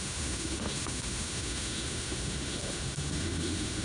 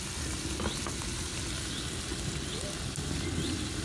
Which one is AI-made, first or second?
first